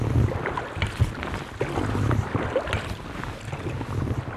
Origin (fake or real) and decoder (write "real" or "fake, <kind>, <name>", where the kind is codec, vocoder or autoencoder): real